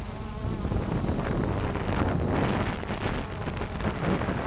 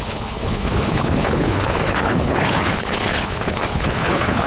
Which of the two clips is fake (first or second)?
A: second